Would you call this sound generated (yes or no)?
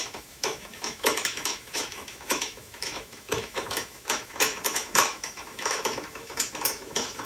yes